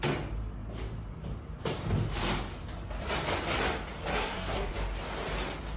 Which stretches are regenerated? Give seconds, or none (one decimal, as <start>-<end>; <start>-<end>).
4.1-4.7